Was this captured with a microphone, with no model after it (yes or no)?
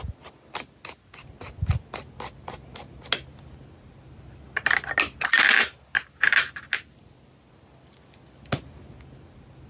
yes